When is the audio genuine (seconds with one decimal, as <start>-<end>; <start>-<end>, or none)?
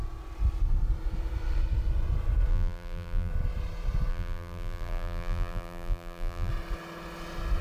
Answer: 0.0-2.5; 3.3-4.1; 6.5-7.6